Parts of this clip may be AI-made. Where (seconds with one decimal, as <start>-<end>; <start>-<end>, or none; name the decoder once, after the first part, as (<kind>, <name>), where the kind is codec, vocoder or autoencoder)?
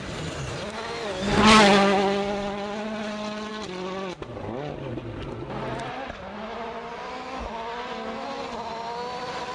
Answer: none